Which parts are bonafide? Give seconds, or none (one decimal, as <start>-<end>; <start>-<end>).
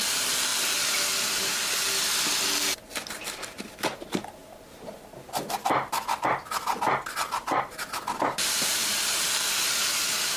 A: 0.0-10.4